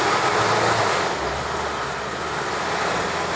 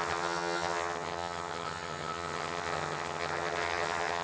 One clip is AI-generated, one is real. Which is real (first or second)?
first